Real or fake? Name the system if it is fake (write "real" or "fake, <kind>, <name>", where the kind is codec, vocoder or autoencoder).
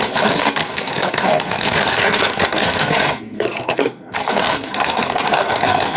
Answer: fake, codec, SNAC